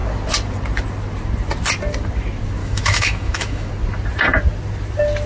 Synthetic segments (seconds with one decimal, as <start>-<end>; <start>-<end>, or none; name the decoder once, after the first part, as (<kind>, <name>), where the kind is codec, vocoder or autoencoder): 2.6-3.7 (autoencoder, DAC-VAE)